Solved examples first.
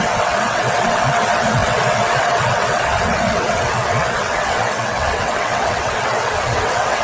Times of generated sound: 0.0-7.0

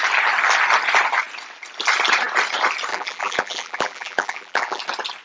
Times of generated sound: 2.9-4.8